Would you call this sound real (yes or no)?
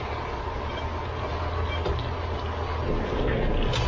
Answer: yes